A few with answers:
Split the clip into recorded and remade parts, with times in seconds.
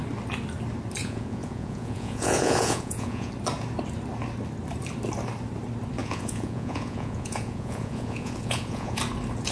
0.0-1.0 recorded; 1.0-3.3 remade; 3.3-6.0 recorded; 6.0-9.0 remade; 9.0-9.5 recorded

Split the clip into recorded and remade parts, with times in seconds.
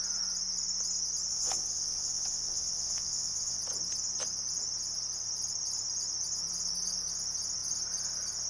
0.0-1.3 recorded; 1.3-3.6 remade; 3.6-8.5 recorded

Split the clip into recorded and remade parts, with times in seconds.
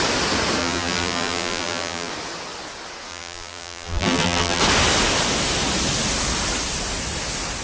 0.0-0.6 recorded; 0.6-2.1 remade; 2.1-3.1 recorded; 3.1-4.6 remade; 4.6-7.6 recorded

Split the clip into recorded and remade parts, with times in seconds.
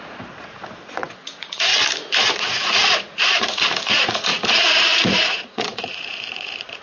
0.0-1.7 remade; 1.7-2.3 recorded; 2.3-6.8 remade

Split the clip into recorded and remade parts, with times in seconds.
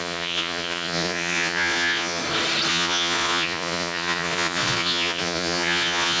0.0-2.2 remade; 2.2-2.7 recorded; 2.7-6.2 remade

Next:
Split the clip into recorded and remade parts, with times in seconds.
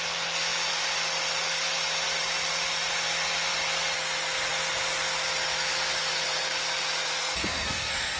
0.0-7.2 recorded; 7.2-8.2 remade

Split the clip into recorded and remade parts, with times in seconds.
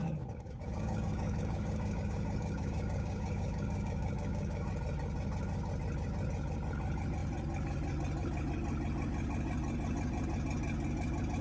0.0-4.7 remade; 4.7-11.4 recorded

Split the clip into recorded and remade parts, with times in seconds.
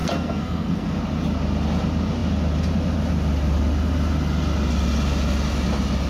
0.0-0.9 remade; 0.9-6.1 recorded